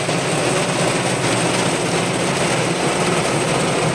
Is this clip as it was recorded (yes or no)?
yes